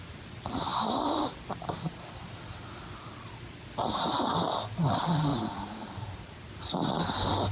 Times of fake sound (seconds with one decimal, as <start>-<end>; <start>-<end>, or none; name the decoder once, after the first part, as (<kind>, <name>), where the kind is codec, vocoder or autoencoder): 5.3-6.5 (vocoder, BigVGAN v2)

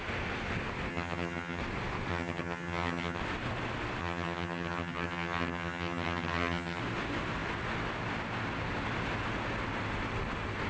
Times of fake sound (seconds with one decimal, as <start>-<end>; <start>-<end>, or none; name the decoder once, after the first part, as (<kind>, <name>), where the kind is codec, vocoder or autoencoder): 0.9-1.6 (vocoder, HiFi-GAN); 2.1-3.2; 4.0-6.8

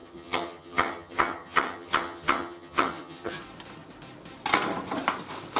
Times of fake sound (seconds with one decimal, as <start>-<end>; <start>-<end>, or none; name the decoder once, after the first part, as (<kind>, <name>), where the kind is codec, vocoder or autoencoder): 0.0-3.4 (vocoder, HiFi-GAN)